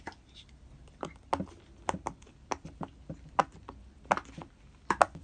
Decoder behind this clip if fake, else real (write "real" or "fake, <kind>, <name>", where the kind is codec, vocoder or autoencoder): real